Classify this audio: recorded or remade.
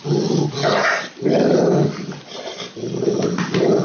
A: recorded